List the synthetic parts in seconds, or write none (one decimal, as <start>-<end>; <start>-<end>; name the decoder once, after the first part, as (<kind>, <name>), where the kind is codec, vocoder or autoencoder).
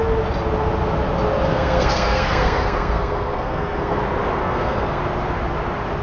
1.5-4.0 (codec, SNAC); 4.4-5.0